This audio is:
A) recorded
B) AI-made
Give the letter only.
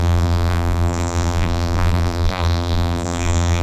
B